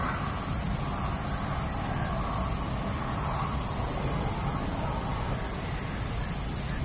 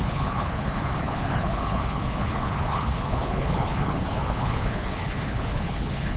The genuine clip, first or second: first